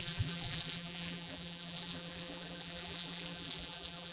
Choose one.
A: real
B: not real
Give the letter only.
B